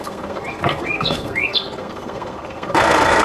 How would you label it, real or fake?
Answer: fake